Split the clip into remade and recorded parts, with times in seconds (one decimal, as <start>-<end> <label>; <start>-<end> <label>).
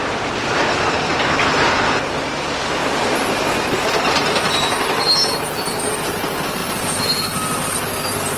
0.0-2.8 recorded; 2.8-3.3 remade; 3.3-8.4 recorded